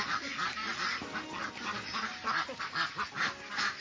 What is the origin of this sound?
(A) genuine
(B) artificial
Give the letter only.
A